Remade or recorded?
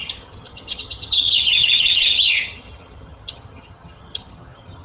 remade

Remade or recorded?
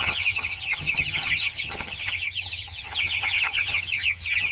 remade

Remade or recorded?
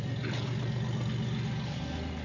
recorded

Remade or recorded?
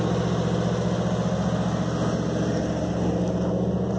recorded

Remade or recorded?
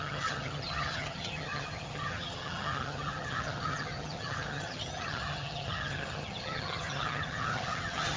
remade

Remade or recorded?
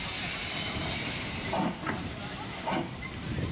recorded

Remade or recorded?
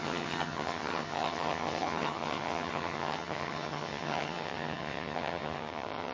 remade